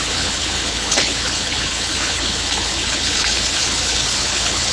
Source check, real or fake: fake